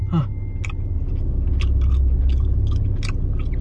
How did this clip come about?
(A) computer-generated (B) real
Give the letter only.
B